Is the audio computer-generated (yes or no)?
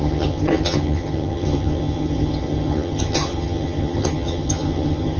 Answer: yes